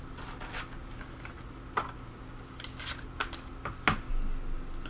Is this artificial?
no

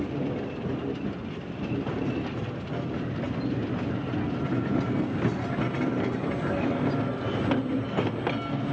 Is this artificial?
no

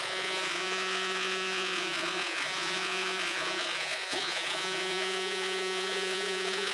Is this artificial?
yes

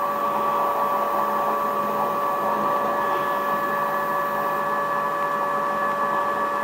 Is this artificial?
no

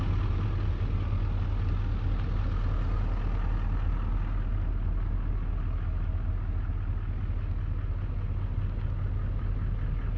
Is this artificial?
no